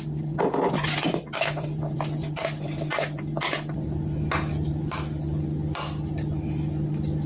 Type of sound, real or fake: real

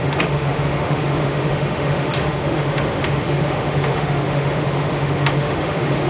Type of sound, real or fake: fake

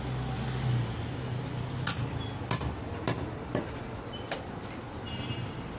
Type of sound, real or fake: real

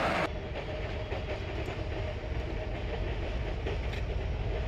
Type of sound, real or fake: real